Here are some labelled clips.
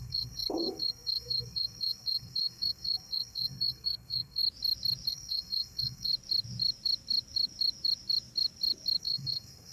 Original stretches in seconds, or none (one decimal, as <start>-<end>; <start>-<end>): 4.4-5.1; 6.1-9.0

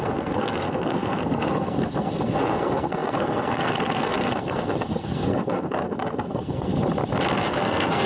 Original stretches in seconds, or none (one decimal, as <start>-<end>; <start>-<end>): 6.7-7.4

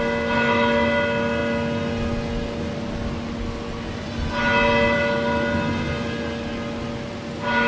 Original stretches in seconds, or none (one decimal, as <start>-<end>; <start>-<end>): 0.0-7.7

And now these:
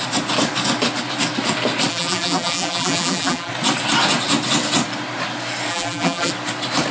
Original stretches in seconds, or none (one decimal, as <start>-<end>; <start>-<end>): 0.0-1.9; 3.5-5.7; 6.3-6.9

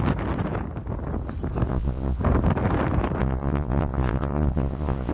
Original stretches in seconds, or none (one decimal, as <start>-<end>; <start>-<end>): 0.0-1.7; 2.2-3.2

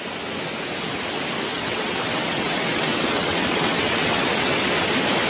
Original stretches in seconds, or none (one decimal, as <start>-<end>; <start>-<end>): 0.0-1.5; 4.7-5.3

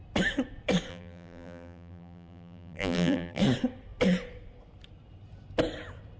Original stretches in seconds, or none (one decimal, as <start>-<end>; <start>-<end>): 0.0-0.9; 3.4-6.2